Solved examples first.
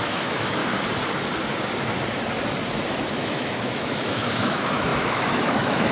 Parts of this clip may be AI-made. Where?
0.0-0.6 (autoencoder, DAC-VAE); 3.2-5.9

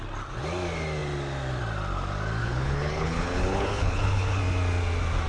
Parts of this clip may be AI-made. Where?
2.4-4.4 (codec, HILCodec)

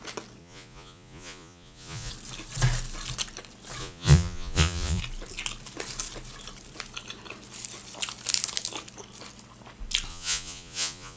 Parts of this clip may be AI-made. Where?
0.4-2.1 (vocoder, Vocos); 3.8-5.0; 10.1-11.2

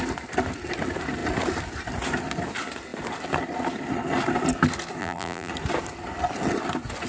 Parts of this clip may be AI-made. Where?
5.0-5.5 (vocoder, BigVGAN v2)

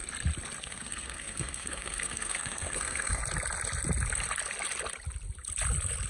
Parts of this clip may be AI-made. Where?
0.6-3.2 (codec, SNAC)

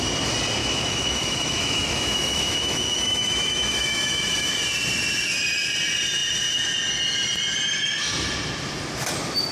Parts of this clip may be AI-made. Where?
0.6-4.5 (autoencoder, DAC-VAE)